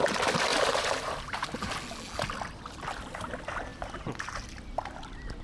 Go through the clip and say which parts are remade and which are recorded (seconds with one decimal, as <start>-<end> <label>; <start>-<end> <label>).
0.0-0.5 recorded; 0.5-1.7 remade; 1.7-5.4 recorded